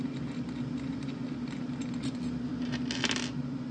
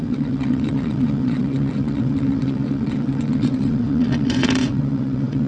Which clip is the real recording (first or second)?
first